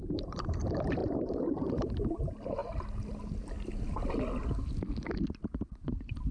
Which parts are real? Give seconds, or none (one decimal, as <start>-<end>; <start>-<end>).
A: 2.6-5.7